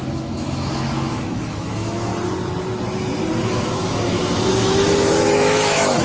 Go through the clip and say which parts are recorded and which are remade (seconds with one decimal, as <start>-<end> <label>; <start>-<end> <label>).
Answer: 0.0-2.1 remade; 2.1-3.4 recorded; 3.4-6.0 remade